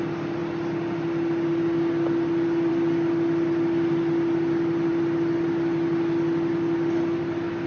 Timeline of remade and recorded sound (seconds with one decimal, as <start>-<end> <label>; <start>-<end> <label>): 0.0-7.7 recorded